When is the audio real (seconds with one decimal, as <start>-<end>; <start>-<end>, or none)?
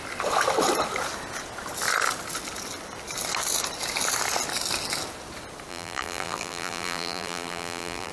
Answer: 0.0-5.7